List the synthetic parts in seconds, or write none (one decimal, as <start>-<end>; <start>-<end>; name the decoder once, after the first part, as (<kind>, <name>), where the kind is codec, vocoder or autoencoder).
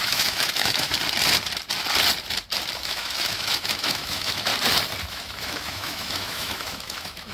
0.0-0.9 (autoencoder, DAC-VAE); 2.8-4.5; 5.1-7.3